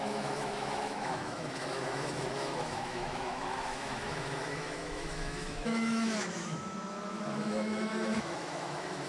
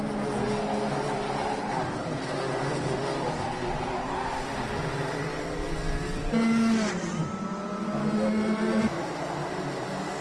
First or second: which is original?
second